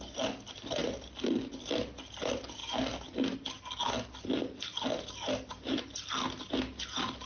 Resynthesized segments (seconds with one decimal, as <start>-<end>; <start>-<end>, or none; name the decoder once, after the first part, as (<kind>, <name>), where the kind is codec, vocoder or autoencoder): 0.8-1.4 (vocoder, BigVGAN v2)